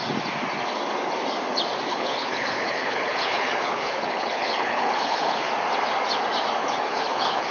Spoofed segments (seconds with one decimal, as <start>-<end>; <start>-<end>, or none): 1.9-5.5; 6.6-7.5